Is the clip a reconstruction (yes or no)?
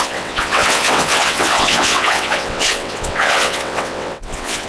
yes